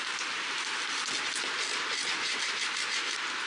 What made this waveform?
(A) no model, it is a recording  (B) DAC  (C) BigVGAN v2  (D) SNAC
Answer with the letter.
A